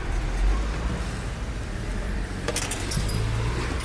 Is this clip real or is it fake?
fake